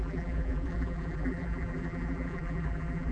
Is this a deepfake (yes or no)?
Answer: yes